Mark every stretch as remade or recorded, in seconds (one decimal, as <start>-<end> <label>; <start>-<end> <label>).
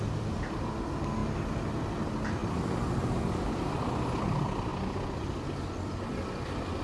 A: 0.0-6.8 recorded